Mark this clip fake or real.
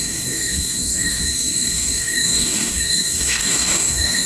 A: fake